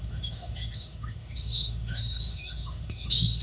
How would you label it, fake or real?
fake